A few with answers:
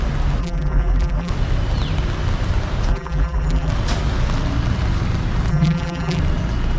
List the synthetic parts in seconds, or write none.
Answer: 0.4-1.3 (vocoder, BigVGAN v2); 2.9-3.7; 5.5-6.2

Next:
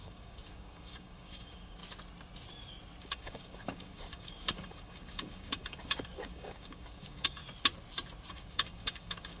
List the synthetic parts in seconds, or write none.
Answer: 0.0-1.8 (codec, DAC); 3.0-7.4; 8.3-9.4

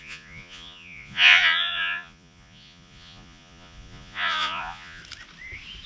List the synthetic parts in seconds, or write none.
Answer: 0.0-5.0 (vocoder, Vocos)

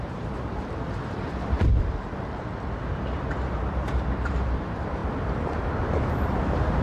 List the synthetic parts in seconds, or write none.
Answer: 0.0-1.7 (vocoder, BigVGAN v2); 2.8-6.8

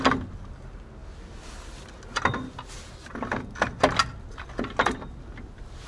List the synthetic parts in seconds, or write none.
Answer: none

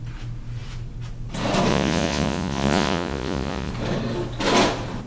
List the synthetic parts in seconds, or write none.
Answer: 1.7-3.7 (vocoder, Vocos)

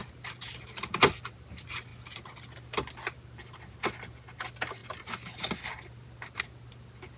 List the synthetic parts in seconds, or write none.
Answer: none